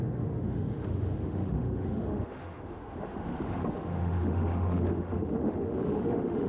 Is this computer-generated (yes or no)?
yes